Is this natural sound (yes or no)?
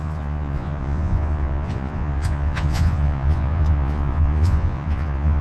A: no